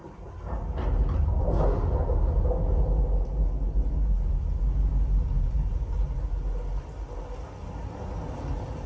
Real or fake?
real